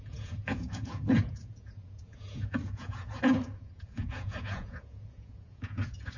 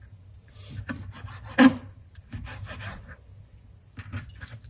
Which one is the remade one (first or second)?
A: first